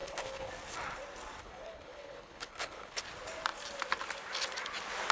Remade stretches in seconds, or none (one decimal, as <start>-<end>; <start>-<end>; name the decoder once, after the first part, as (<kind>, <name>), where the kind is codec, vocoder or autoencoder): 0.0-0.5 (codec, HILCodec); 1.4-3.0